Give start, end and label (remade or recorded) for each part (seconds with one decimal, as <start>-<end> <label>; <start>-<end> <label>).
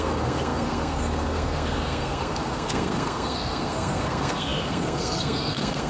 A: 0.0-5.9 remade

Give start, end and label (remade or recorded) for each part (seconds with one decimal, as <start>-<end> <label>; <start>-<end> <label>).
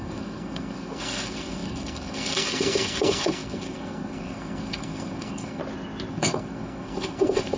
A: 0.0-5.6 remade; 5.6-6.1 recorded; 6.1-7.6 remade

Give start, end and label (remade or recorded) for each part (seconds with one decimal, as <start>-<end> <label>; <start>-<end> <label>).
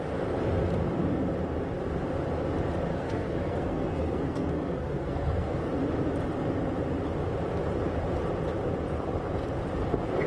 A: 0.0-2.9 recorded; 2.9-5.7 remade; 5.7-10.3 recorded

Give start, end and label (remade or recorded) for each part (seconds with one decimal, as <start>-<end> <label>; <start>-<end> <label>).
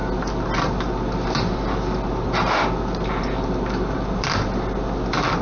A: 0.0-5.4 recorded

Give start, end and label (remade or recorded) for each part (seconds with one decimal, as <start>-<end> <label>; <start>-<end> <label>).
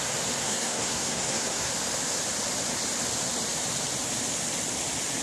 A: 0.0-0.4 recorded; 0.4-1.7 remade; 1.7-5.2 recorded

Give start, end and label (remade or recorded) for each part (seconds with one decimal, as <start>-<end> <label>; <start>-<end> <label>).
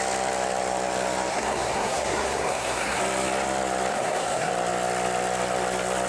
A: 0.0-1.3 recorded; 1.3-3.0 remade; 3.0-3.9 recorded; 3.9-4.5 remade; 4.5-6.1 recorded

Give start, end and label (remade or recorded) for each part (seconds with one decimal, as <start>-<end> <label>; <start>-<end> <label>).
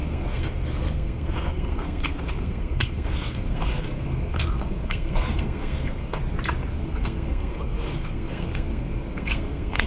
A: 0.0-6.2 remade; 6.2-6.7 recorded; 6.7-9.9 remade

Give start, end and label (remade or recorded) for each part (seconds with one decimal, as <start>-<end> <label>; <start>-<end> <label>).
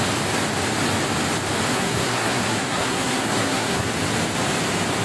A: 0.0-1.7 recorded; 1.7-3.9 remade; 3.9-5.0 recorded